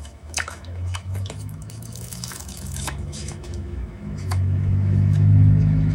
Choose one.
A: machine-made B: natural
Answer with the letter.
A